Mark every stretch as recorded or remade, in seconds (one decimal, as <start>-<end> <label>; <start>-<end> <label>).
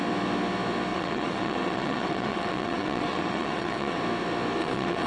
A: 0.0-0.9 recorded; 0.9-4.0 remade; 4.0-4.6 recorded; 4.6-5.1 remade